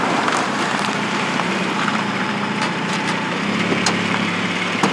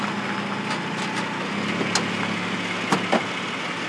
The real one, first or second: second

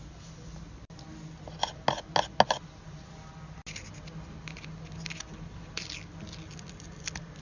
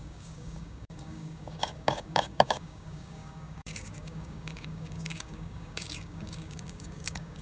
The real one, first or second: first